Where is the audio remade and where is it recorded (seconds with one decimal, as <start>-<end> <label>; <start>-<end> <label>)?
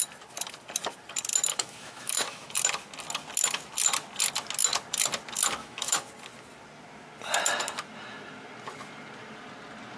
0.0-1.5 recorded; 1.5-2.5 remade; 2.5-5.6 recorded; 5.6-6.1 remade; 6.1-10.0 recorded